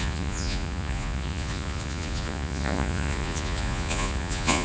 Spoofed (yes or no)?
yes